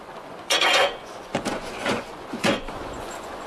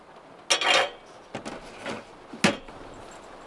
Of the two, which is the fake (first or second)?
first